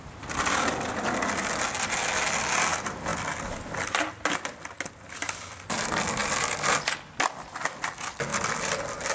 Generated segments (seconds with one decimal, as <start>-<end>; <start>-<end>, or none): none